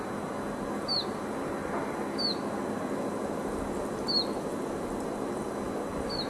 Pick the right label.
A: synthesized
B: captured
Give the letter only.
B